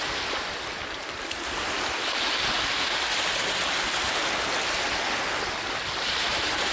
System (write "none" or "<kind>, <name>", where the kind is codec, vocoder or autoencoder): none